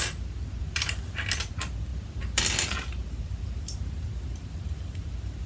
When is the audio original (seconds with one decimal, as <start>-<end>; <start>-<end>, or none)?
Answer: 0.0-3.0